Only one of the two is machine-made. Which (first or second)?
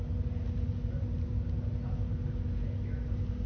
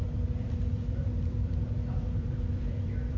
second